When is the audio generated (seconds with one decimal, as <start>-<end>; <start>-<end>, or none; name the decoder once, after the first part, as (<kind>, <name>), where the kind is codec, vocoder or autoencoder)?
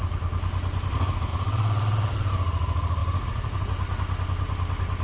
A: 1.3-2.3 (vocoder, WaveNeXt)